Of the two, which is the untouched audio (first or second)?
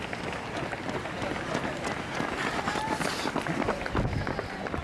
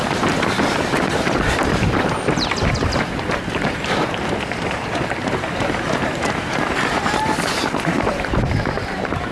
first